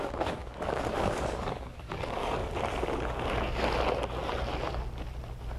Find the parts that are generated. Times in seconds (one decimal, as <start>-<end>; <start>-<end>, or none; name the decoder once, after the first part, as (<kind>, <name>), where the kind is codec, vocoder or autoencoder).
0.0-2.4 (codec, DAC)

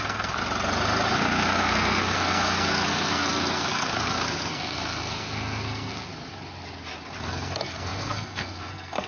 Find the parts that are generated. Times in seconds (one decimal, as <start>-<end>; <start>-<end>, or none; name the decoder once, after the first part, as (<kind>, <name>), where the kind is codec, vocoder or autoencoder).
0.0-0.4 (codec, SNAC); 1.1-6.1; 7.2-9.1

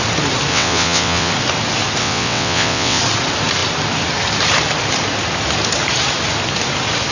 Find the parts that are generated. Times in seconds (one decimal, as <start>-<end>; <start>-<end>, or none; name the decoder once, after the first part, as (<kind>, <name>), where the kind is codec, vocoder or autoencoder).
0.5-1.3 (vocoder, WaveNeXt); 2.0-3.0

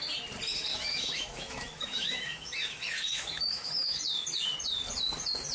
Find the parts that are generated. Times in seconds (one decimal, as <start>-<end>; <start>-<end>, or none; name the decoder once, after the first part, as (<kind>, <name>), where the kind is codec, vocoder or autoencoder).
0.7-4.0 (autoencoder, DAC-VAE)

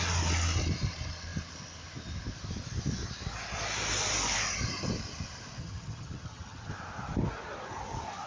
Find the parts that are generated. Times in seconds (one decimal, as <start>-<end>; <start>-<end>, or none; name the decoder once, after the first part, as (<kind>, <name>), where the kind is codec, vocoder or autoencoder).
5.6-6.7 (vocoder, HiFi-GAN)

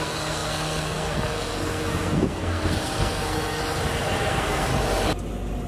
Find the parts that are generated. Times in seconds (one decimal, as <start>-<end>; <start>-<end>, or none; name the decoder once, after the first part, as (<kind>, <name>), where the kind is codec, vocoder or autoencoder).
0.0-3.6 (codec, SNAC); 4.2-4.7

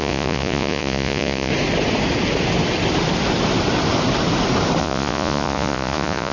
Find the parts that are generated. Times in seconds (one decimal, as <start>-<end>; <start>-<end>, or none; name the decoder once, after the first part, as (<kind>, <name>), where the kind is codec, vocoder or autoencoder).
0.0-1.5 (vocoder, Vocos); 4.8-6.3

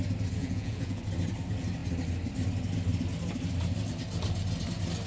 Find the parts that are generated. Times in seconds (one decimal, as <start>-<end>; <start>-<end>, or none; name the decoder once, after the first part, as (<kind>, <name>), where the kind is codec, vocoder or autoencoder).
0.4-1.0 (vocoder, Vocos)